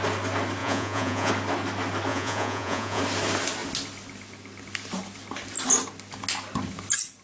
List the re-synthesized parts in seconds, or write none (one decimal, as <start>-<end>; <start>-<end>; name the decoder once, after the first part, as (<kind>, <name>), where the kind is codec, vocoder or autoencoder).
0.6-1.3 (vocoder, Vocos); 2.1-3.0